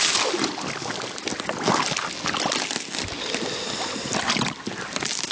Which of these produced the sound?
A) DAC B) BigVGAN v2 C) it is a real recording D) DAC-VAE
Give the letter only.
C